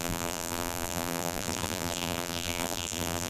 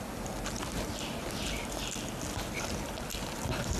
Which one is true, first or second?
second